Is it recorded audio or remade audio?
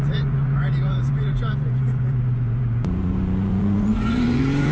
remade